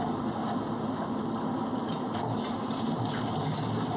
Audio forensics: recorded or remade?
recorded